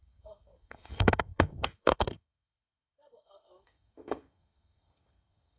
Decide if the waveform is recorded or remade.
remade